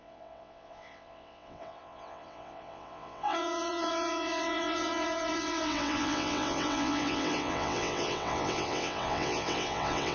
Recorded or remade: remade